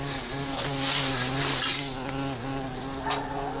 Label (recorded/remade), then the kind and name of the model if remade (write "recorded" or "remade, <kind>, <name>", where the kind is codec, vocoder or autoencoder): recorded